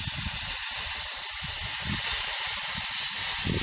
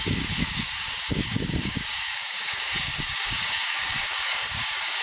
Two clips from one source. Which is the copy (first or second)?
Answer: second